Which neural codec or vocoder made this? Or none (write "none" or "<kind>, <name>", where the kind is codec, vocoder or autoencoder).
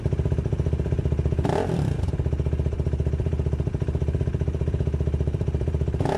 vocoder, BigVGAN v2